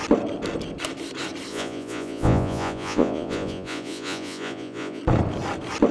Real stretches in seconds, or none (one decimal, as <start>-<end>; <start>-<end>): 0.0-1.5; 5.0-5.9